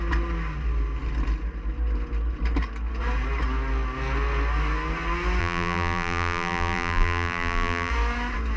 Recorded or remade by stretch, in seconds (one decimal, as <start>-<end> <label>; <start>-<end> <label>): 0.0-5.4 recorded; 5.4-7.9 remade; 7.9-8.6 recorded